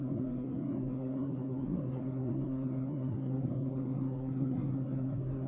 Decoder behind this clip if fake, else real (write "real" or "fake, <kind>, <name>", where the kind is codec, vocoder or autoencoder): fake, codec, SNAC